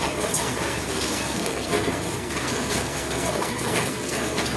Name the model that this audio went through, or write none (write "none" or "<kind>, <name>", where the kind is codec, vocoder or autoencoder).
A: codec, SNAC